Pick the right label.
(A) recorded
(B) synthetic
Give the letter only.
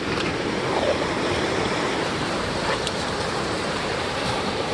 B